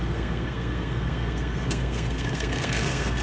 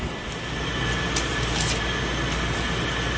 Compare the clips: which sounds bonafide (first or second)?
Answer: second